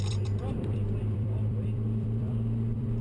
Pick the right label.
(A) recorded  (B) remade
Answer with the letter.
B